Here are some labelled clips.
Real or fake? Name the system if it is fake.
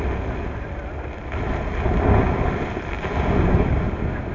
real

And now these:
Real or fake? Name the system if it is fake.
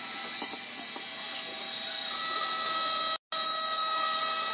real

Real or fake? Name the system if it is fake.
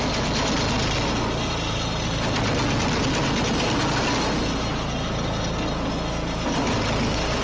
real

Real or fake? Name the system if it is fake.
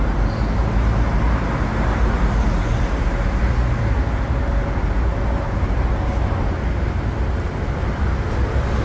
real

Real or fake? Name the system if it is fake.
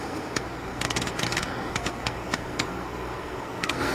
fake, codec, SNAC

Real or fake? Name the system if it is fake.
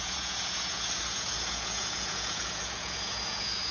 fake, vocoder, Vocos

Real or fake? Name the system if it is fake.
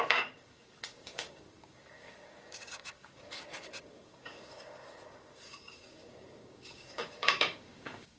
fake, codec, DAC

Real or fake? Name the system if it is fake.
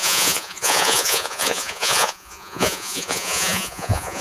fake, vocoder, Vocos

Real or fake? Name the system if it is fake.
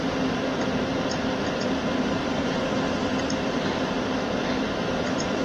fake, vocoder, BigVGAN v2